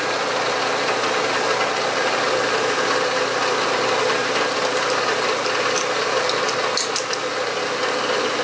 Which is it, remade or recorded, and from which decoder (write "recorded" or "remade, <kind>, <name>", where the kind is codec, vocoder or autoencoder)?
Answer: recorded